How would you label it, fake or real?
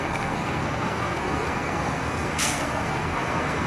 fake